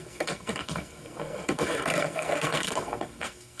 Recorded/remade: remade